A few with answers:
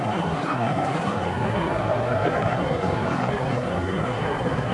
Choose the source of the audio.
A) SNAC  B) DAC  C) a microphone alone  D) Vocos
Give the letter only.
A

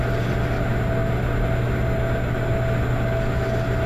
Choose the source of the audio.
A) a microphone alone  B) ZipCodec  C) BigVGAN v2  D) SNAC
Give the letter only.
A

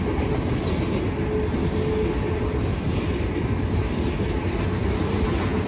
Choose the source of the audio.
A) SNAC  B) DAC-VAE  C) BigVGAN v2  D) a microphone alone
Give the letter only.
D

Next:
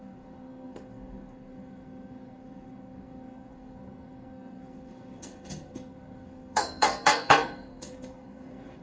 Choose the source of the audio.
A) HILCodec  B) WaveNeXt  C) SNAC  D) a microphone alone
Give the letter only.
C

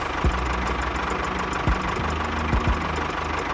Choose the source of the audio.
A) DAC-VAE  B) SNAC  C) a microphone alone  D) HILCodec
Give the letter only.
C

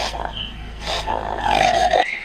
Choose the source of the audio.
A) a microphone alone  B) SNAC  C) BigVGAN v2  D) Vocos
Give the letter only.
B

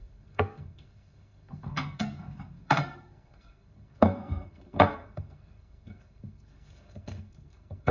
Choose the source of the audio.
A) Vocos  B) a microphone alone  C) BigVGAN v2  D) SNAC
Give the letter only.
D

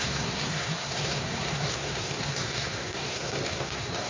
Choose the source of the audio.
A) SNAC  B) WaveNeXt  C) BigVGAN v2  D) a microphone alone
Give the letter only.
A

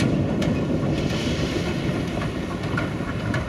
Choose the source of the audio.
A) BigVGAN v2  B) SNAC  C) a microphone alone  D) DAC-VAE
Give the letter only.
C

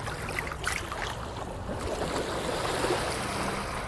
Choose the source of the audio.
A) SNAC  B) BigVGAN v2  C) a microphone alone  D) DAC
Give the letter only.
C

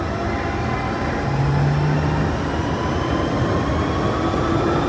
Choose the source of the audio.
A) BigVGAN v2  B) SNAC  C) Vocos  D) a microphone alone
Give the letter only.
D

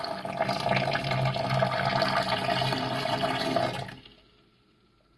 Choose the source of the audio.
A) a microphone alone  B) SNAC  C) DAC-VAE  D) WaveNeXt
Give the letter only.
A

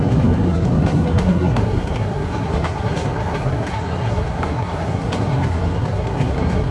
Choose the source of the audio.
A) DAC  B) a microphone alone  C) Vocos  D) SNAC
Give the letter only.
D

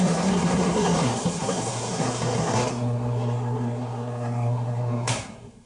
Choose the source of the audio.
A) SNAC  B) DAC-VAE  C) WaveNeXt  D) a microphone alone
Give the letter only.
A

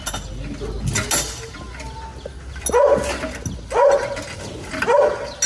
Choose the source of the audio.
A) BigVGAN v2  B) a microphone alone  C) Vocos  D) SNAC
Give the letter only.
B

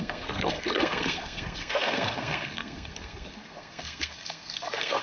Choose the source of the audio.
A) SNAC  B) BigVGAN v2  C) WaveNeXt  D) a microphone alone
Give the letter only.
A